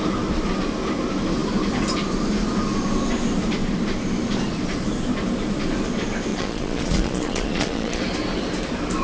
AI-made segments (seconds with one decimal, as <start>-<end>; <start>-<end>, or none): 6.3-8.0